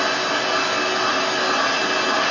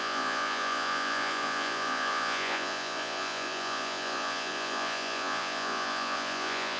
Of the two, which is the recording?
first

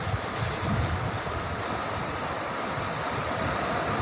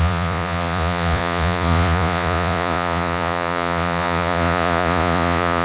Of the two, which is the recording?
first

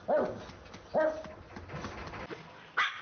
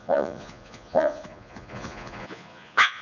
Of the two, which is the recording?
first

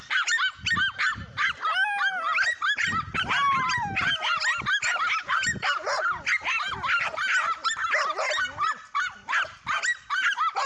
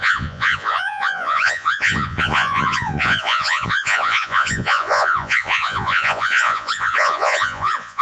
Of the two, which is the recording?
first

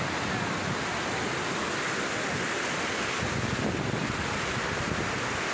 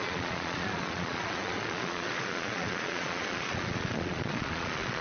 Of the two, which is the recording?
first